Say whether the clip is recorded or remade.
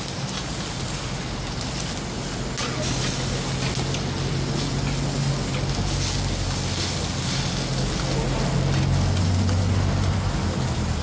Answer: recorded